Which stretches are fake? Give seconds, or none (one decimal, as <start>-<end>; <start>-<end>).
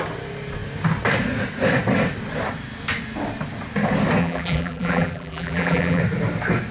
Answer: 4.2-6.0